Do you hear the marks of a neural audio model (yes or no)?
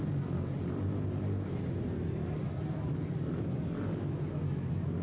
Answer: no